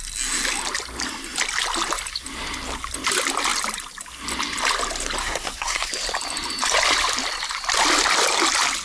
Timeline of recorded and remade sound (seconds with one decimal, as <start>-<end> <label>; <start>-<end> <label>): 0.0-5.2 recorded; 5.2-5.9 remade; 5.9-8.8 recorded